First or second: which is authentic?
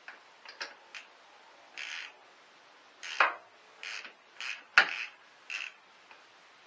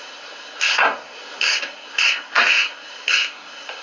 first